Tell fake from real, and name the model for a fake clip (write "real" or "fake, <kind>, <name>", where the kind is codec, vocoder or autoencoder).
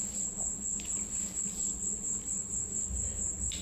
real